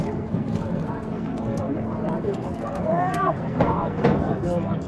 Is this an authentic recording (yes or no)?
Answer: no